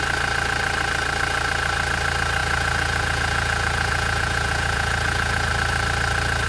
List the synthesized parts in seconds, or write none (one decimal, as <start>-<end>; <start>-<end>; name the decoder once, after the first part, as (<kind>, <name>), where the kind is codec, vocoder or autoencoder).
2.4-5.5 (vocoder, Vocos)